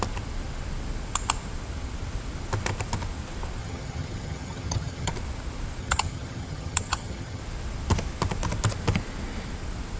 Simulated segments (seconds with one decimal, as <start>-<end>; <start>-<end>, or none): 3.6-5.1; 5.8-7.4

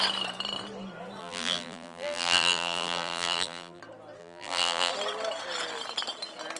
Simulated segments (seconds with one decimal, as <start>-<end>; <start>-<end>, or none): 1.2-3.8; 4.2-4.9

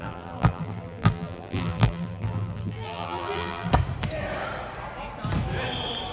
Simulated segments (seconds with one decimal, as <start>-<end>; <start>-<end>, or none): 0.0-3.7

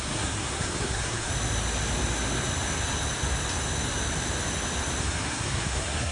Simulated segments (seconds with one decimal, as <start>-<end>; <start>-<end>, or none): 0.0-1.3; 5.0-6.1

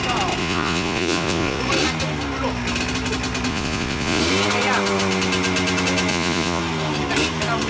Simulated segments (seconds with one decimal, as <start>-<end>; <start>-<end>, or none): 0.4-1.6; 3.5-4.2; 6.1-6.6